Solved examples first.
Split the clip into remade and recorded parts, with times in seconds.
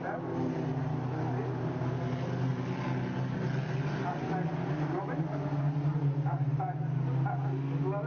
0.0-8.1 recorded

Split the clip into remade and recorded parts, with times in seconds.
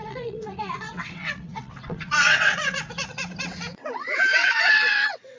0.0-5.4 remade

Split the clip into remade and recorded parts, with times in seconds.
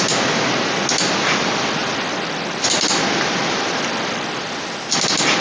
0.0-5.4 recorded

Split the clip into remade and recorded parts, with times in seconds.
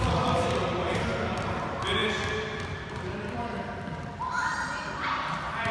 0.0-5.7 recorded